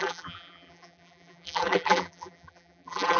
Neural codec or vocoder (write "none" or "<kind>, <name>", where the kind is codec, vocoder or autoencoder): vocoder, BigVGAN v2